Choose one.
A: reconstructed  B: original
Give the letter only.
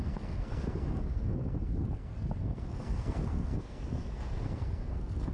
A